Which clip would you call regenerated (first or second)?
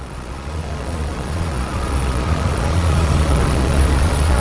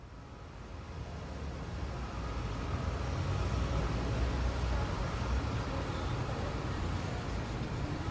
first